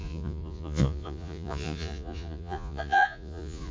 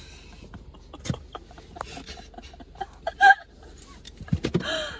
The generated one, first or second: first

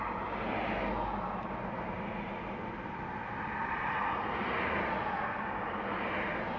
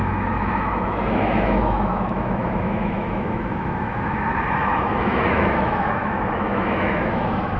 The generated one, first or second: second